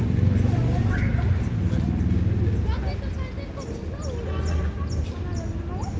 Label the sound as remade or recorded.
recorded